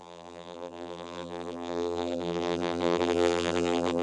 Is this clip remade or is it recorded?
remade